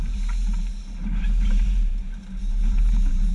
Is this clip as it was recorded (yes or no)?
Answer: no